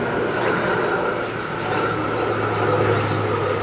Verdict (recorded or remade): recorded